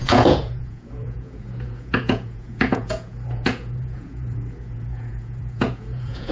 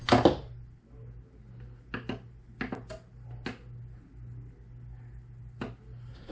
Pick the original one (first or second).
second